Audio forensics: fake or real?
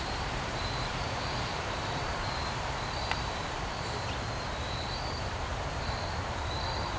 fake